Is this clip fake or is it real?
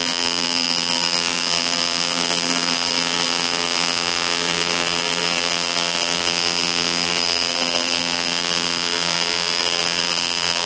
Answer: fake